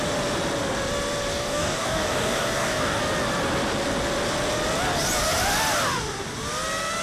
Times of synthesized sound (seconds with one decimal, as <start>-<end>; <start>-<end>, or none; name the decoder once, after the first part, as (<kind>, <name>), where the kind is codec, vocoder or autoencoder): 1.3-3.0 (codec, DAC)